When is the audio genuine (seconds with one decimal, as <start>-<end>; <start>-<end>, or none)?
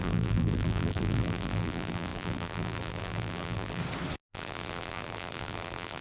3.8-4.3